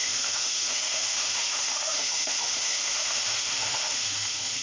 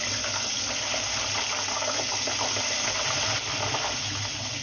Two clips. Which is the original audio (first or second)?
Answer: second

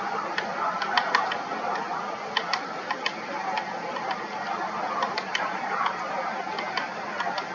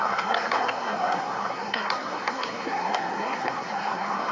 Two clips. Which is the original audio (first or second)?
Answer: first